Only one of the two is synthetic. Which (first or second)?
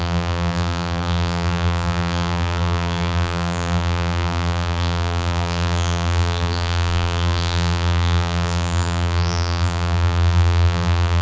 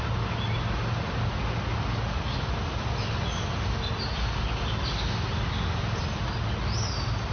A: first